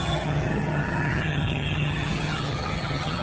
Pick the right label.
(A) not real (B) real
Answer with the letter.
A